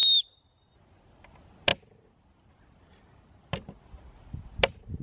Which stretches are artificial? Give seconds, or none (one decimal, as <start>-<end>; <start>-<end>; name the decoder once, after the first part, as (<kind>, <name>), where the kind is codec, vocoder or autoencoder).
none